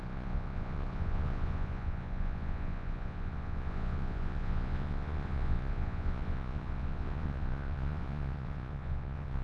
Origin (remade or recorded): remade